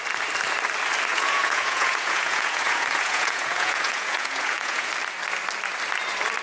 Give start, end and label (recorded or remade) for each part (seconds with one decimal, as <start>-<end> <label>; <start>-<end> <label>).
0.0-1.1 recorded; 1.1-4.9 remade; 4.9-6.4 recorded